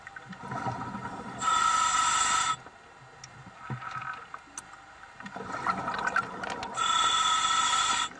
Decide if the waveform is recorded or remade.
recorded